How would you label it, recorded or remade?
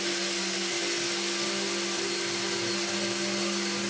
recorded